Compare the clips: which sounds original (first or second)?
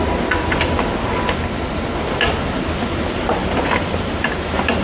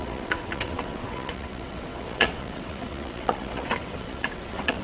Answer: first